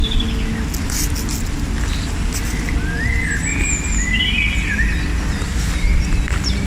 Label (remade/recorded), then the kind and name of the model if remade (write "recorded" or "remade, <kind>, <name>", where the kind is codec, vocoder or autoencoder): recorded